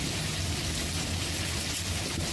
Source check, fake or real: real